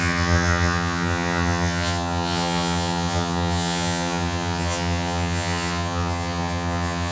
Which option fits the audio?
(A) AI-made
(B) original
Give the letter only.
A